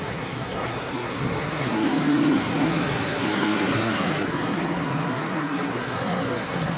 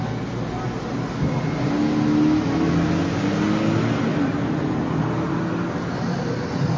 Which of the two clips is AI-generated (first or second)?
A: first